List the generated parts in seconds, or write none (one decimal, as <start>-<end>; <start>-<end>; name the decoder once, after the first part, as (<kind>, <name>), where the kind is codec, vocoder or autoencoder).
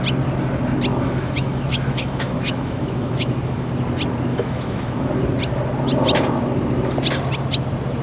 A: 0.9-3.7 (autoencoder, DAC-VAE); 4.3-5.1